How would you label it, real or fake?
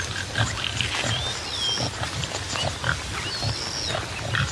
real